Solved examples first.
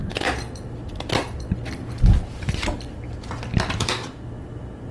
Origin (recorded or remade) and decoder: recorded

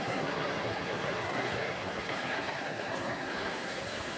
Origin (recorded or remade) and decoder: remade, codec, SNAC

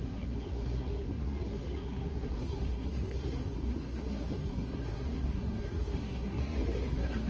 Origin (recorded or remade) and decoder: remade, codec, SNAC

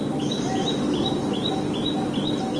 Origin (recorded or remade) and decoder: recorded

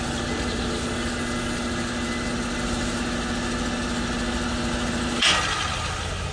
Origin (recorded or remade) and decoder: recorded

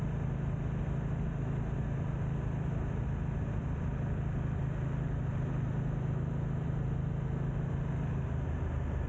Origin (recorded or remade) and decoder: recorded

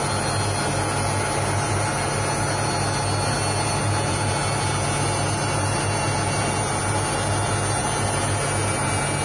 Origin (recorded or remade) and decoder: recorded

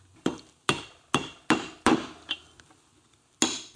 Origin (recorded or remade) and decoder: recorded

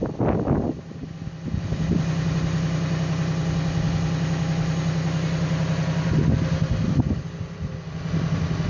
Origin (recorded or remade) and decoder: recorded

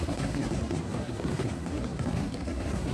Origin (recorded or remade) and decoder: remade, codec, SNAC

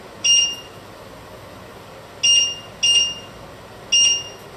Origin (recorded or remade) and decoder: recorded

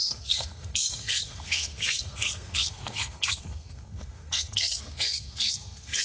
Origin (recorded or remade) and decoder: remade, codec, SNAC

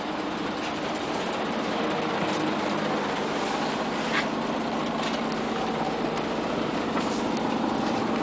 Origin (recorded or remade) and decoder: recorded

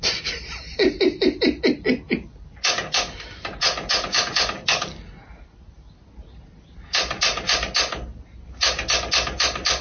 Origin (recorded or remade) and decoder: recorded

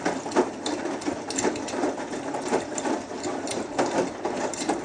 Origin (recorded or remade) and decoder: recorded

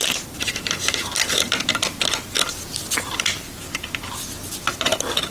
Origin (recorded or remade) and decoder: recorded